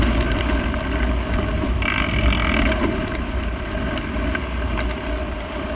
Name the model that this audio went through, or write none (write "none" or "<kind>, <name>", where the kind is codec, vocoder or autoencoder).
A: none